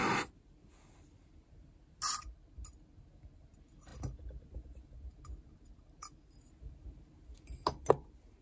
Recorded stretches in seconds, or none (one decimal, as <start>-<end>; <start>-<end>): 0.0-8.4